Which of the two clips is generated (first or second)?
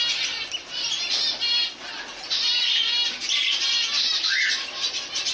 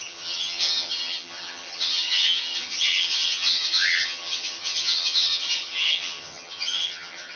second